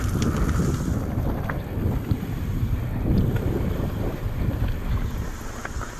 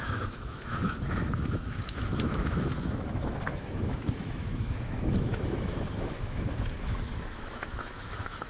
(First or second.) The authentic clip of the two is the first